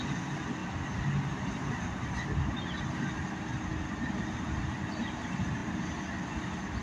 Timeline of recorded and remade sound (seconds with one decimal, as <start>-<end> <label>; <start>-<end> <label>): 0.0-6.8 recorded